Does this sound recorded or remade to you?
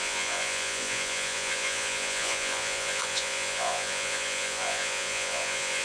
remade